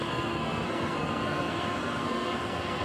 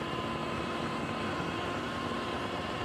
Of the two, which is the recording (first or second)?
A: second